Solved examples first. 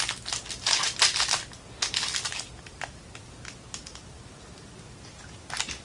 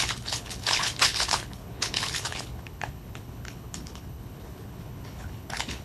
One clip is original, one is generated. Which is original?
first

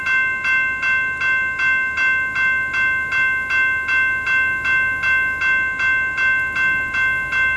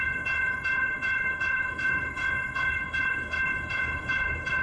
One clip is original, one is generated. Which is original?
first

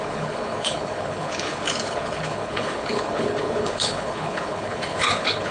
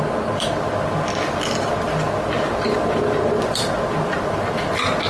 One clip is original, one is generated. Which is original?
second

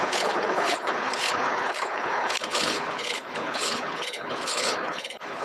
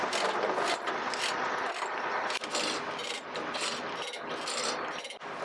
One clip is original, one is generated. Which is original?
second